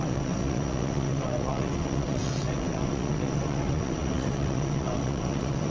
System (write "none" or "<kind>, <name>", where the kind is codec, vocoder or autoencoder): vocoder, WaveNeXt